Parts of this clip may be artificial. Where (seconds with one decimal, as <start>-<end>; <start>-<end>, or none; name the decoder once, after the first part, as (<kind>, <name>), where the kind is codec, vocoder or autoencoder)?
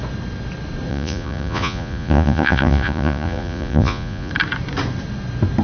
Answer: 0.9-4.3 (vocoder, Vocos)